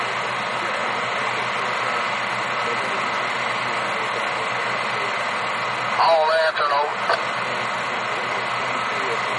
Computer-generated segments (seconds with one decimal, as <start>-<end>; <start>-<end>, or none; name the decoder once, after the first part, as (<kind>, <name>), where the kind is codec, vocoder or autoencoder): none